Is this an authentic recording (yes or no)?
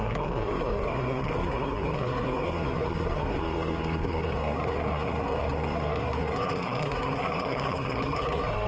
no